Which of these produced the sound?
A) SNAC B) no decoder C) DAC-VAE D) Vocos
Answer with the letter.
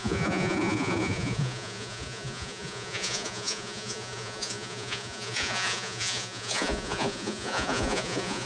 D